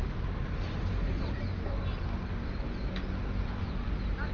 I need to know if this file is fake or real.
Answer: real